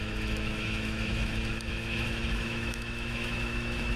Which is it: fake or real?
fake